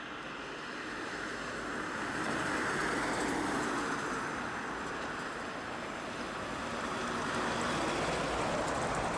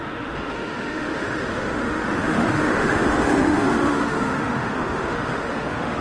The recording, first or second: first